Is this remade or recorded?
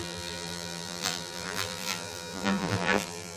remade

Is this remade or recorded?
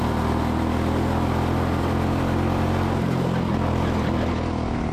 recorded